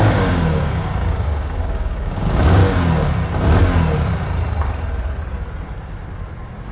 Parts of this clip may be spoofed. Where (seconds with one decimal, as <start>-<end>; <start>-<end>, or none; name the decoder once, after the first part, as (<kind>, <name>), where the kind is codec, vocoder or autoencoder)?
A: 0.0-2.6 (codec, DAC)